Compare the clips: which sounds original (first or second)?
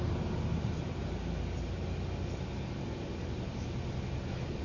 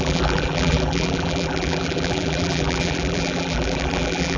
first